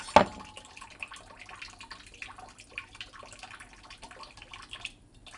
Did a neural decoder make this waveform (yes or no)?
no